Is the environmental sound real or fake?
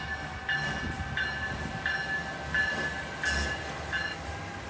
real